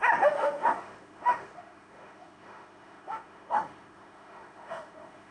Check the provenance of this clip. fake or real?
fake